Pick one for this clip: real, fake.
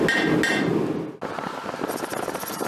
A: real